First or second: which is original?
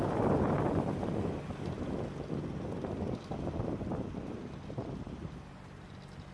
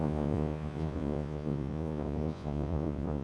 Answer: first